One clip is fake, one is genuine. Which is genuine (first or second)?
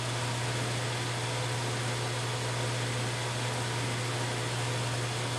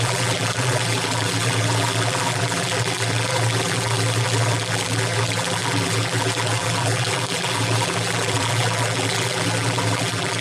first